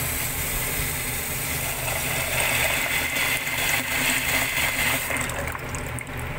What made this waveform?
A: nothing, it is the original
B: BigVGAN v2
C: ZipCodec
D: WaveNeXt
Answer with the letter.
A